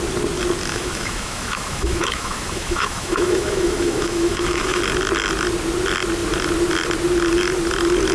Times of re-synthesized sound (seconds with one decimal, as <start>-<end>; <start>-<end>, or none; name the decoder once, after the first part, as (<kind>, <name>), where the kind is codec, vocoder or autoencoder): 0.7-4.8 (autoencoder, DAC-VAE)